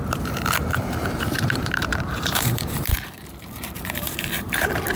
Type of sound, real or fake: fake